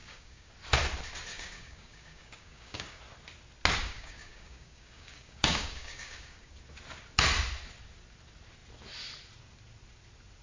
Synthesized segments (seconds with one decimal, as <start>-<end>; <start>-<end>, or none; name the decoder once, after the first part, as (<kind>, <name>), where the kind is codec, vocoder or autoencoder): 0.0-0.5 (codec, DAC); 1.3-3.0; 3.8-6.5